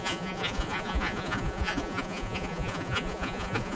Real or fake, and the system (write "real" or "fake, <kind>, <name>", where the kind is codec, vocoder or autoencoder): fake, vocoder, Vocos